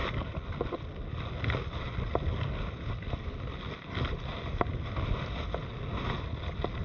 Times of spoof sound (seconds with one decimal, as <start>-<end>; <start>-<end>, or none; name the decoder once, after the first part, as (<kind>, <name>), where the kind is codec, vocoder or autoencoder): none